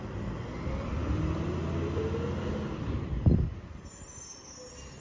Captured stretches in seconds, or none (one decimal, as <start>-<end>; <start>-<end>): 0.0-5.0